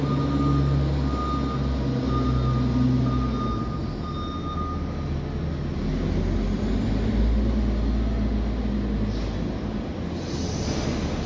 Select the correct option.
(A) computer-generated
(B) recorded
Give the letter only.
B